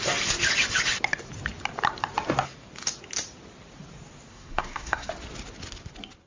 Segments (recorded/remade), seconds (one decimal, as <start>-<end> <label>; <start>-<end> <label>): 0.0-4.3 recorded; 4.3-5.1 remade; 5.1-6.3 recorded